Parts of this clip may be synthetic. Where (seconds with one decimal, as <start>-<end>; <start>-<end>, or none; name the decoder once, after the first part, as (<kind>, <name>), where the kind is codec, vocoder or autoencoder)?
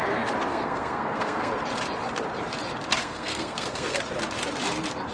0.5-1.5 (codec, SNAC); 3.0-4.0